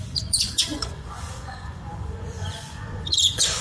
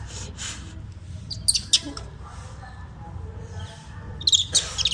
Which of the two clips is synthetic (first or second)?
first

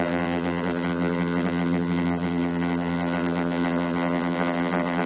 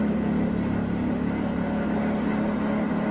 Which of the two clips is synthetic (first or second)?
first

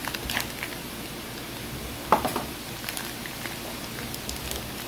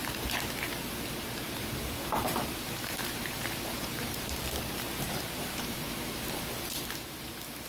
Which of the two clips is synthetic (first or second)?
second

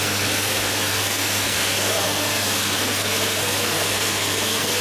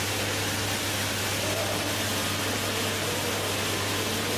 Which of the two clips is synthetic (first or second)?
first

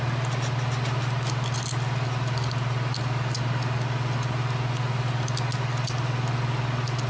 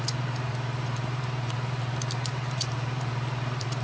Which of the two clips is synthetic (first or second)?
second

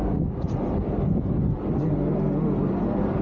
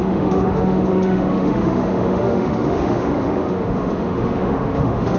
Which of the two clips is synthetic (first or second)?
second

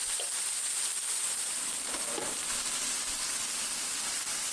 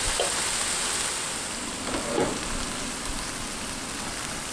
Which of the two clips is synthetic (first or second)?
second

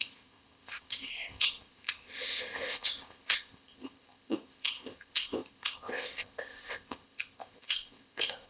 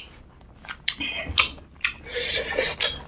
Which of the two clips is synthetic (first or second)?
first